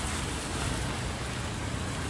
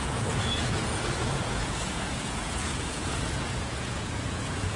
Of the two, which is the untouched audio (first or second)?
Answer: first